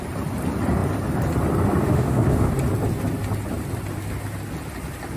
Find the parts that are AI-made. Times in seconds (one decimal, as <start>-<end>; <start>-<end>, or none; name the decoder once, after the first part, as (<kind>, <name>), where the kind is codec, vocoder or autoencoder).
1.8-2.5 (autoencoder, DAC-VAE)